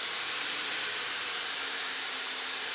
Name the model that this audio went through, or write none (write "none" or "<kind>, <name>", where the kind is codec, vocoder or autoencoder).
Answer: vocoder, BigVGAN v2